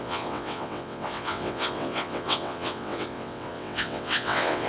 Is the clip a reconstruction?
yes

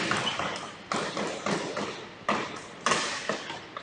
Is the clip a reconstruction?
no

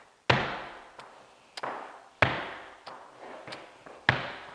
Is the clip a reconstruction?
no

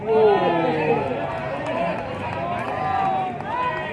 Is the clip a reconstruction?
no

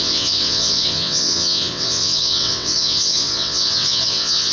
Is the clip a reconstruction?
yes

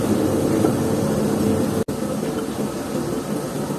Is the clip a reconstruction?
no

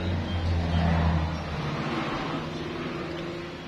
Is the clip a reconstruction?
no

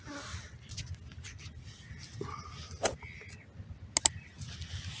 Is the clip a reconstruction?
no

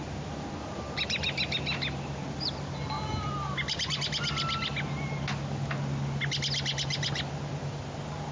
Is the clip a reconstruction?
no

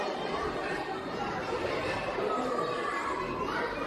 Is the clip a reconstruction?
yes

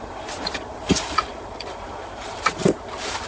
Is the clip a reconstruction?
yes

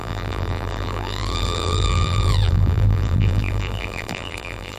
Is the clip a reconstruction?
yes